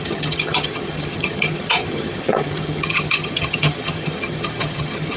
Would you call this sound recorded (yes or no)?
no